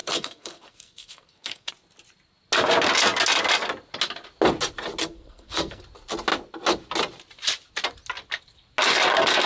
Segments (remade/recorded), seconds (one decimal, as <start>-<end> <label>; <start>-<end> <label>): 0.0-1.7 remade; 1.7-5.0 recorded; 5.0-5.8 remade; 5.8-9.5 recorded